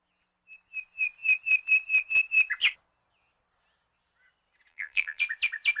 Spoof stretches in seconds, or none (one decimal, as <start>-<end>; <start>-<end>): 4.7-5.2